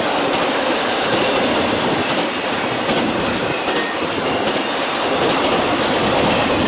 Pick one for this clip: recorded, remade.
recorded